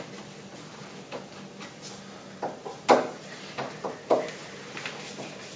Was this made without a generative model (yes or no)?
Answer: yes